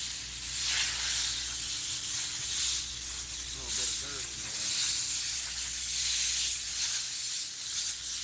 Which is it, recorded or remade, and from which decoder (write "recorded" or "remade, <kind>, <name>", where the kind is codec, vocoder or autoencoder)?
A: recorded